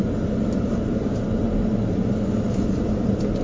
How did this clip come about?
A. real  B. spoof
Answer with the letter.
A